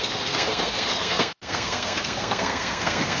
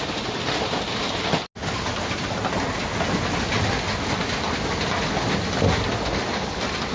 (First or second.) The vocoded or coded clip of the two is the first